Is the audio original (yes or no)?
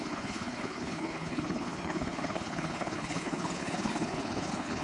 no